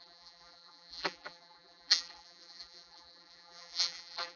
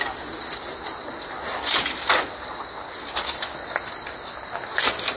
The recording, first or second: second